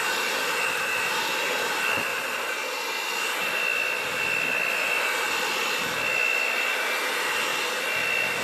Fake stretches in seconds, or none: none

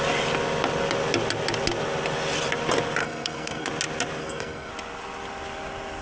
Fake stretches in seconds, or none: 3.0-3.7 (codec, SNAC); 4.2-4.7

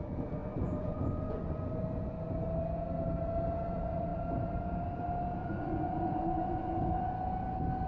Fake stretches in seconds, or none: 0.4-1.7 (vocoder, Vocos); 5.4-7.1

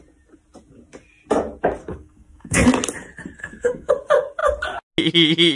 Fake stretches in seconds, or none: 1.8-2.6 (codec, SNAC); 3.4-3.9

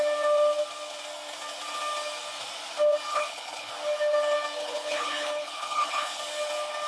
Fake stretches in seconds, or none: 3.1-3.7 (codec, HILCodec); 4.6-6.2

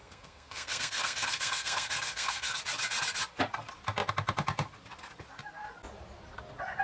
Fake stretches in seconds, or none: 0.0-2.6 (codec, SNAC)